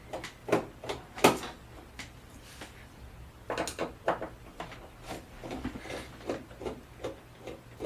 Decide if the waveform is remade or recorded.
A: recorded